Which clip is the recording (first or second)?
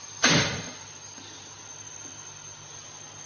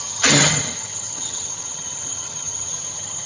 first